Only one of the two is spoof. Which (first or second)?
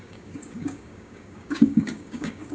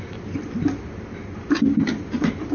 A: first